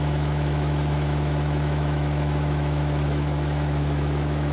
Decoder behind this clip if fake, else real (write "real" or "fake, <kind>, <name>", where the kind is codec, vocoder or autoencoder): fake, autoencoder, DAC-VAE